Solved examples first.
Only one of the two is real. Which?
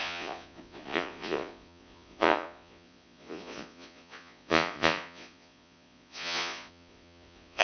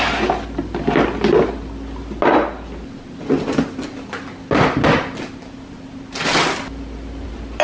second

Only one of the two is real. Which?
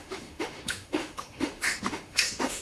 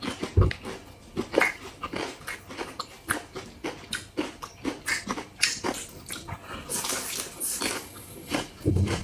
second